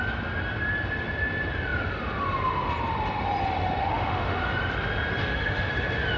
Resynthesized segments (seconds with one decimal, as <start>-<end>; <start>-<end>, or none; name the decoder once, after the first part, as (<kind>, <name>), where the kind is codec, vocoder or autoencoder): 3.8-4.5 (autoencoder, DAC-VAE); 5.2-5.7